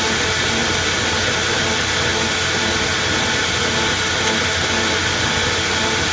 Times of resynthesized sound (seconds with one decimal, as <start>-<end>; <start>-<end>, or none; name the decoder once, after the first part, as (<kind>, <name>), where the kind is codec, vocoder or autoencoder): none